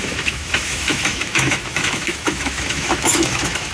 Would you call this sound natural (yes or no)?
no